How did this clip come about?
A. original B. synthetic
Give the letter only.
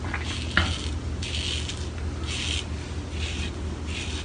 A